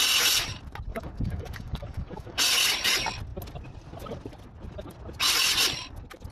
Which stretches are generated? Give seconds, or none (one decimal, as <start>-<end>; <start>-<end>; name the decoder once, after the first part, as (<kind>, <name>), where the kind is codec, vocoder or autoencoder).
0.9-2.4 (codec, DAC)